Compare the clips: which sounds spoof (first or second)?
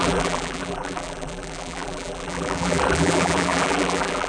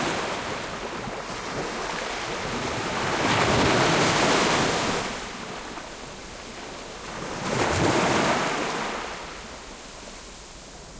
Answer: first